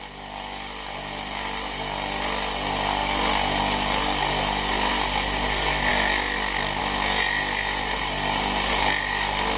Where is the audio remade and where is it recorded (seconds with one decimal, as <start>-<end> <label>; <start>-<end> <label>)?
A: 0.0-9.6 recorded